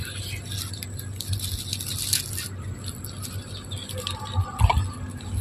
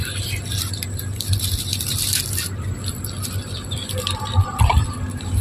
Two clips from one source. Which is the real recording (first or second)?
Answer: first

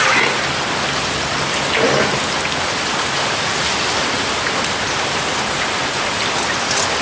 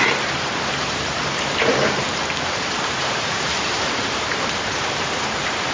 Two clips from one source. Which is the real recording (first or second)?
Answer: first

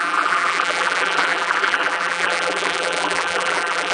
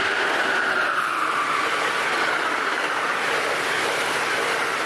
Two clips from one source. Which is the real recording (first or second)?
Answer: second